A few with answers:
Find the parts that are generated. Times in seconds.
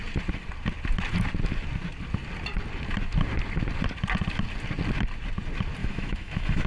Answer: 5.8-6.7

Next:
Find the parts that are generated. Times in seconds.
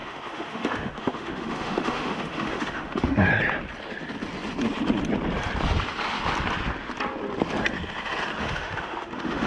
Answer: 0.0-3.3; 8.4-9.5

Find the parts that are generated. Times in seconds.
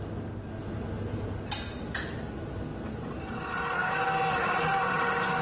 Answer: none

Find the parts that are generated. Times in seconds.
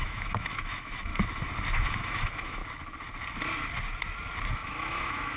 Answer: 0.0-1.1; 1.7-2.6; 4.5-5.4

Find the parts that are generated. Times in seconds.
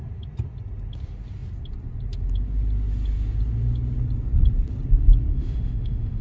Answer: 5.3-6.2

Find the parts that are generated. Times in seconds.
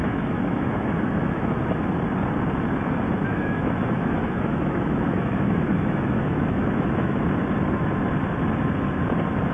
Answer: 0.0-1.5; 3.3-7.3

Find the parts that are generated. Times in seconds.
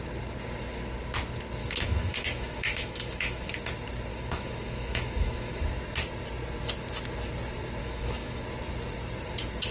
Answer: 1.6-3.5; 4.1-5.7; 7.8-8.4